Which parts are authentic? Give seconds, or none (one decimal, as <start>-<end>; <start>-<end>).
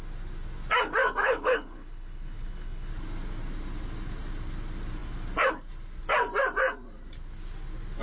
0.0-1.2; 2.9-8.0